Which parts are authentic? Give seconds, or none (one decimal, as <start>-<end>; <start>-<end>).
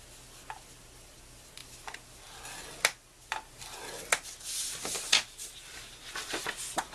0.0-6.9